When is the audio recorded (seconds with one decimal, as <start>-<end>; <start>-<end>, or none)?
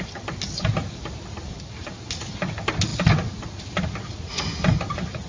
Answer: 0.0-5.3